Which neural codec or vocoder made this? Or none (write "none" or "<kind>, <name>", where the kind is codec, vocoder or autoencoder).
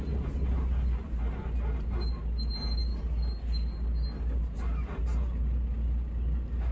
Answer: none